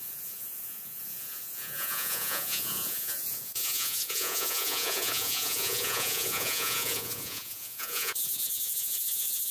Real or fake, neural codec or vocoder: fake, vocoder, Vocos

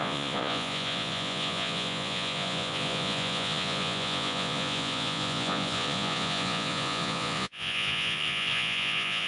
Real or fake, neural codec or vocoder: fake, vocoder, Vocos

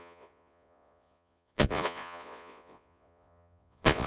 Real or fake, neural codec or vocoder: fake, vocoder, Vocos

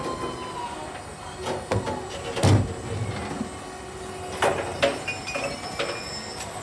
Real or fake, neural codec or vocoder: real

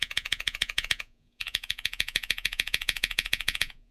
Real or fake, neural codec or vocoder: fake, vocoder, Vocos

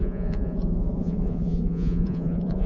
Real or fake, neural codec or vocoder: fake, vocoder, Vocos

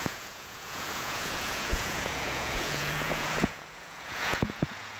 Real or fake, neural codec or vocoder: fake, vocoder, Vocos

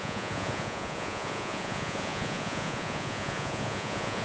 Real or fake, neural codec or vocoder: fake, vocoder, Vocos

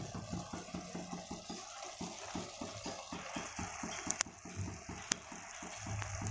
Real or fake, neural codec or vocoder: real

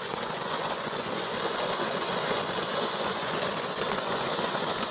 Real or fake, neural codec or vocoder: fake, vocoder, Vocos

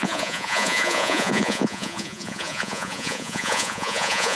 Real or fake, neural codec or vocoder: fake, vocoder, Vocos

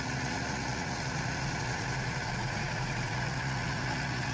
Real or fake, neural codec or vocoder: fake, vocoder, Vocos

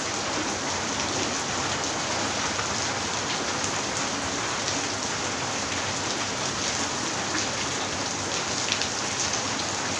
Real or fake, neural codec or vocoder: real